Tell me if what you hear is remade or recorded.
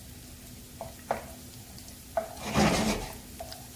recorded